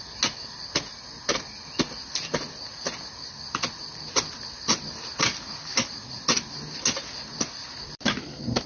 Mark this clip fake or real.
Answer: real